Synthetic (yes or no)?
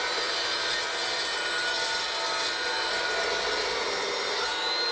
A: no